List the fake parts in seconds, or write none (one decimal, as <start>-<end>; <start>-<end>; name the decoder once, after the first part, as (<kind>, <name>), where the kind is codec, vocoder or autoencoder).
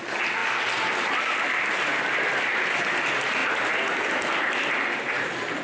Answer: none